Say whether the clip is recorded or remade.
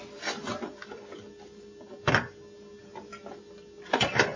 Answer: recorded